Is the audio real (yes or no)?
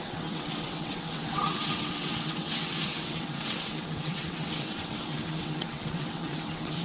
no